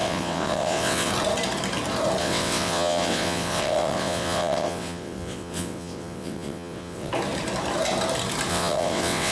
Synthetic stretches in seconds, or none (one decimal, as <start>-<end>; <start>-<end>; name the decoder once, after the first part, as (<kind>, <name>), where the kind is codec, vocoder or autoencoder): 0.0-1.1 (vocoder, WaveNeXt); 2.2-7.1; 8.5-9.3